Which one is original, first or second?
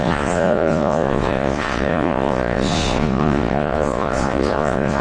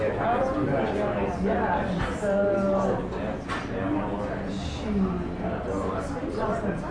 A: second